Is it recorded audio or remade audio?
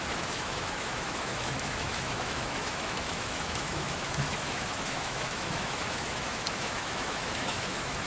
remade